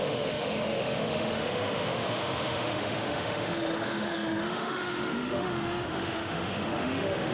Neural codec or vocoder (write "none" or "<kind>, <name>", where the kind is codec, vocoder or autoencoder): autoencoder, DAC-VAE